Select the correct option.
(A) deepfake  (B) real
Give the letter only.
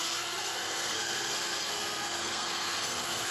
A